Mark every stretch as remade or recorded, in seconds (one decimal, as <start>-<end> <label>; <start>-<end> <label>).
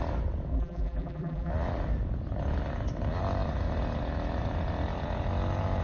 0.0-0.5 recorded; 0.5-1.5 remade; 1.5-5.8 recorded